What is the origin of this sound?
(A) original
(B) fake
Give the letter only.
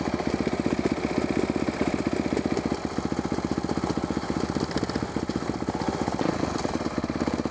A